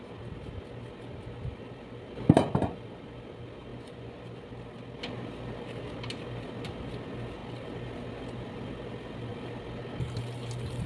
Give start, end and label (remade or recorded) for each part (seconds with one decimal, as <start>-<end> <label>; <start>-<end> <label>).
0.0-3.7 recorded; 3.7-4.2 remade; 4.2-10.9 recorded